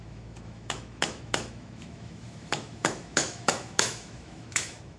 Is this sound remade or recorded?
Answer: remade